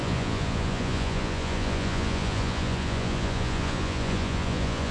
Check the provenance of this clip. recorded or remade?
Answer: remade